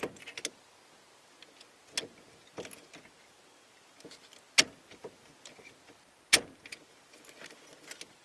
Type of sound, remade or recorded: recorded